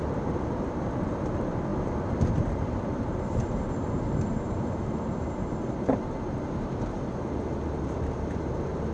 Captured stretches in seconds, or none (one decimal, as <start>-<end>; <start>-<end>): 1.7-2.2